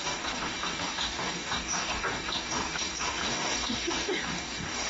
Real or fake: fake